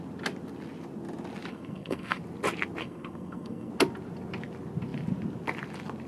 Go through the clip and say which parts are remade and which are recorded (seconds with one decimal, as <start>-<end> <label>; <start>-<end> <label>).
0.0-1.5 recorded; 1.5-2.2 remade; 2.2-2.8 recorded; 2.8-3.7 remade; 3.7-6.1 recorded